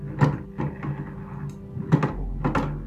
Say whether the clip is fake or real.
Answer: real